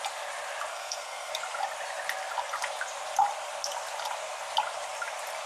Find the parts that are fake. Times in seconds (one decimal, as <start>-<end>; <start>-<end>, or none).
0.7-1.3